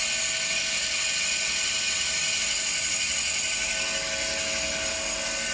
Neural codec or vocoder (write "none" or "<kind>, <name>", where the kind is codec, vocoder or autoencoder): none